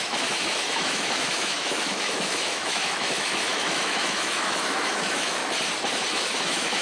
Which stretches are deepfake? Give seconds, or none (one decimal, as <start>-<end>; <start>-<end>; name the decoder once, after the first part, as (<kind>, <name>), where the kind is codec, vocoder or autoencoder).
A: 0.0-5.4 (autoencoder, DAC-VAE); 6.1-6.8